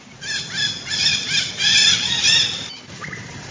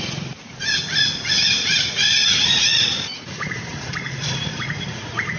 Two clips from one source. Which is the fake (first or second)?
second